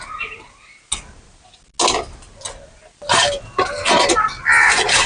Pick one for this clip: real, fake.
real